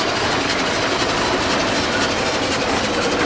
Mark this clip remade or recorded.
recorded